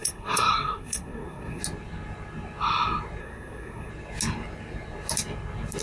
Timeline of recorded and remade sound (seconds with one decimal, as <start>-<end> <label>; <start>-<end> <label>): 0.0-1.6 remade; 1.6-3.2 recorded; 3.2-3.9 remade; 3.9-5.8 recorded